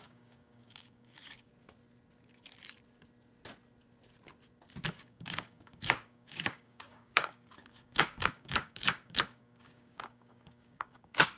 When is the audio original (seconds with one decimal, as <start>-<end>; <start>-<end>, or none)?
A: 1.5-4.9